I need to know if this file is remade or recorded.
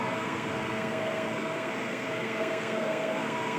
remade